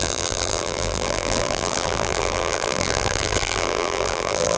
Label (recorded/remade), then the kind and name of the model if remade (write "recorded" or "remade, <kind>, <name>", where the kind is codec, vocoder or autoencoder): remade, vocoder, BigVGAN v2